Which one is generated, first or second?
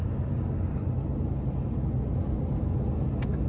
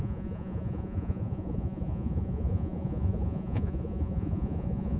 second